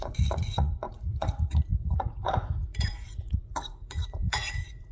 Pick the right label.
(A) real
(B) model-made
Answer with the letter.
B